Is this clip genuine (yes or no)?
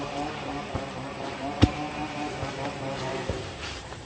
no